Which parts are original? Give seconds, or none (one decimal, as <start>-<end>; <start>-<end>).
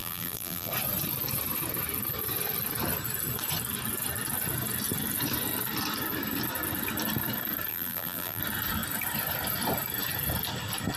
0.7-7.7; 8.4-11.0